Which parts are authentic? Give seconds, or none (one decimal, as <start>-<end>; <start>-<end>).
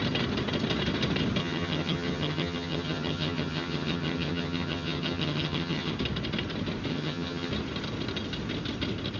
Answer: 0.0-1.4; 5.9-6.9; 7.5-9.2